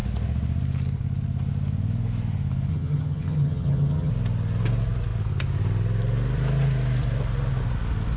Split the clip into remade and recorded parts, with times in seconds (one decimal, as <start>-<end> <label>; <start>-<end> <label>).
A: 0.0-2.7 recorded; 2.7-4.1 remade; 4.1-8.2 recorded